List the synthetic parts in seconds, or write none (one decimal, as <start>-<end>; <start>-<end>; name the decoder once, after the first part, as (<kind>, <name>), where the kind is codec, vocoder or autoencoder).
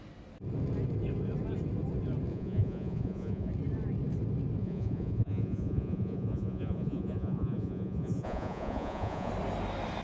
2.3-3.5 (vocoder, Vocos); 4.6-9.3